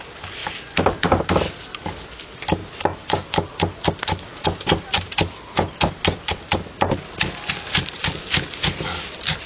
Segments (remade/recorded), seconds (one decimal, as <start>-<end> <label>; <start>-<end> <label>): 0.0-9.5 recorded